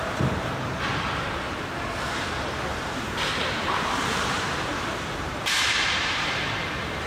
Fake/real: fake